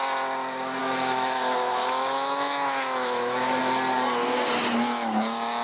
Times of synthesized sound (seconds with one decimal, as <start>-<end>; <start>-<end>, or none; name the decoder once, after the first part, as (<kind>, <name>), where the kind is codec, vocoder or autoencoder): 0.8-3.6 (autoencoder, DAC-VAE)